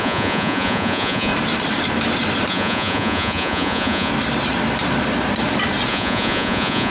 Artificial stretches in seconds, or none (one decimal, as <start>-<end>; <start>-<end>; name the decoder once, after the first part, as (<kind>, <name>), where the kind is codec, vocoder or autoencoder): 0.0-1.3 (vocoder, Vocos); 2.5-4.1; 5.9-6.9

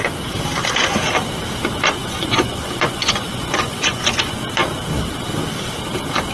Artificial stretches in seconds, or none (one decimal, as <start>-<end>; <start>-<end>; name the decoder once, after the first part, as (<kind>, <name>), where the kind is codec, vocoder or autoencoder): 2.0-4.5 (vocoder, Vocos)

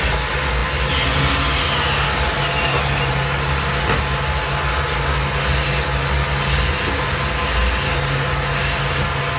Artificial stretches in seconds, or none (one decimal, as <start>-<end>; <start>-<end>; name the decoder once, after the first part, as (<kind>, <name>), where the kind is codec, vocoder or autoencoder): none

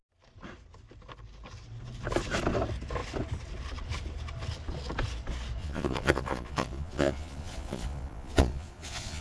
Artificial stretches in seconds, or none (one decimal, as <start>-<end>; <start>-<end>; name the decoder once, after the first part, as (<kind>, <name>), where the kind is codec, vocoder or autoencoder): 5.6-9.2 (vocoder, Vocos)

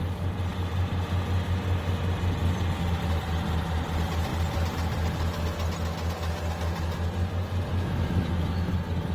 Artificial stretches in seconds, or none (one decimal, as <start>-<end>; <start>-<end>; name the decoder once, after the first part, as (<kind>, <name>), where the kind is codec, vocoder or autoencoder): 7.7-8.7 (autoencoder, DAC-VAE)

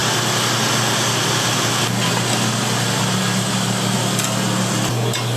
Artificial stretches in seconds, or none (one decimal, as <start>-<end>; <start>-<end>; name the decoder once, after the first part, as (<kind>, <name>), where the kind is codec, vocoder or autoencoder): none

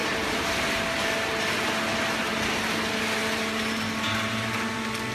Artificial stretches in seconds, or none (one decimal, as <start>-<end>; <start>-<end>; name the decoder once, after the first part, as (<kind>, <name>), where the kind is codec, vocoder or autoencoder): 0.0-0.5 (vocoder, BigVGAN v2); 3.2-3.8